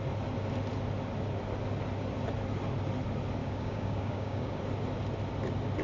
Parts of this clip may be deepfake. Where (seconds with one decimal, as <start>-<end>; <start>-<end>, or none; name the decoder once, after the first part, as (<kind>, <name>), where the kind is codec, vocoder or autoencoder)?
3.4-4.6 (codec, DAC)